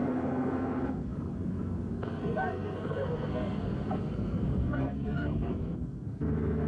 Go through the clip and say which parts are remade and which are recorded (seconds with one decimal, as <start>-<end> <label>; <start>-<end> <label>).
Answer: 0.0-6.7 remade